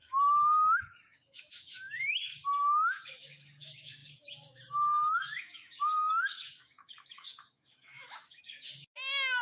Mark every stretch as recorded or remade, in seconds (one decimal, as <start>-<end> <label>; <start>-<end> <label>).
0.0-9.4 remade